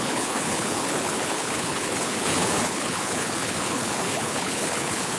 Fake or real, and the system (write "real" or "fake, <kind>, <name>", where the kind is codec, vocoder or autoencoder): fake, codec, HILCodec